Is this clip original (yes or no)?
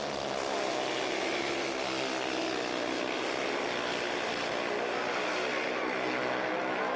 yes